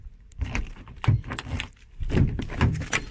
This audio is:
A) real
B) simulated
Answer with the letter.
B